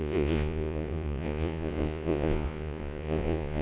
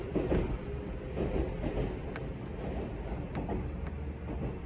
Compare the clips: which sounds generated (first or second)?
first